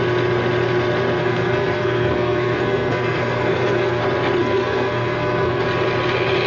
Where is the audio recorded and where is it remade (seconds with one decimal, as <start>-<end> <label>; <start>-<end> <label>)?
0.0-1.2 recorded; 1.2-4.0 remade; 4.0-4.4 recorded; 4.4-5.6 remade; 5.6-6.5 recorded